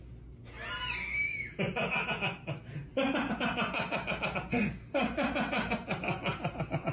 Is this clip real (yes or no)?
yes